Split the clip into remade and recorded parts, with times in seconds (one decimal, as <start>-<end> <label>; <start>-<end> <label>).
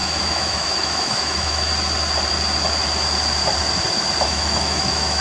0.0-1.7 remade; 1.7-4.2 recorded; 4.2-5.2 remade